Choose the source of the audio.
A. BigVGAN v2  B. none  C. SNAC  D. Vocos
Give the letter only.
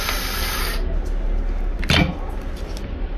B